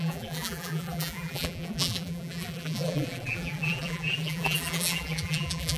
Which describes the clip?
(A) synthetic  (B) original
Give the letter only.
A